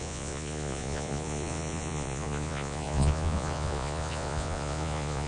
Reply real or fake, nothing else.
fake